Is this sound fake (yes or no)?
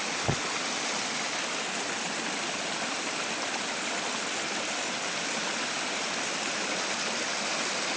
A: no